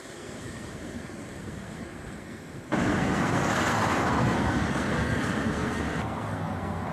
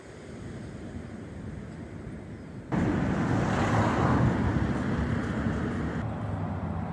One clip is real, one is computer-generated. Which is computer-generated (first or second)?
first